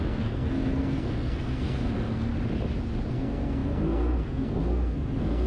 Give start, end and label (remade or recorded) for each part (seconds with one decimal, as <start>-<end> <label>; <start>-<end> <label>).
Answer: 0.0-2.3 remade; 2.3-3.1 recorded; 3.1-5.5 remade